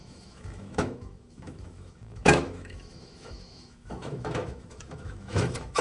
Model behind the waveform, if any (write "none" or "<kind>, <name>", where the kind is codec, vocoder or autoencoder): autoencoder, DAC-VAE